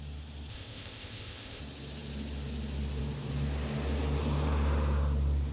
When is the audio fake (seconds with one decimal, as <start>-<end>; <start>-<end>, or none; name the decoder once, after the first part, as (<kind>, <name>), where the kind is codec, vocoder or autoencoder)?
0.5-1.6 (codec, ZipCodec)